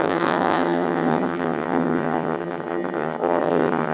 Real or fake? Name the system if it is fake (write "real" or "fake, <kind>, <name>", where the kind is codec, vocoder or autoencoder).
fake, vocoder, HiFi-GAN